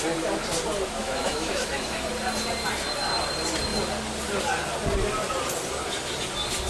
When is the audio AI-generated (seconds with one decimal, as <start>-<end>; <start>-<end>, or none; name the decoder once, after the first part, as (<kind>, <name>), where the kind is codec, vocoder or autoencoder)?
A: 1.0-2.1 (autoencoder, DAC-VAE)